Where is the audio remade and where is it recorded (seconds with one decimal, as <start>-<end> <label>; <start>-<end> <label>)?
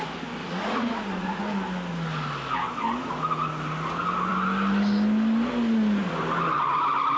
0.0-0.4 recorded; 0.4-1.4 remade; 1.4-7.2 recorded